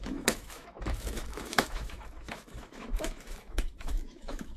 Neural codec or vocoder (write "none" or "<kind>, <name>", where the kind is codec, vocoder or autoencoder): autoencoder, DAC-VAE